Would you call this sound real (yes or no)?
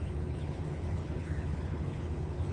no